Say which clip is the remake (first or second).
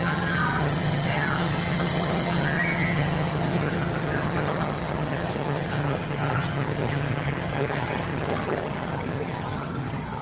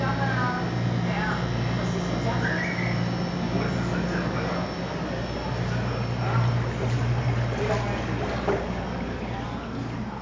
first